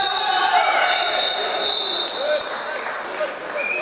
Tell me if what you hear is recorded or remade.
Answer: remade